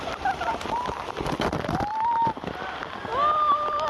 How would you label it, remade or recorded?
remade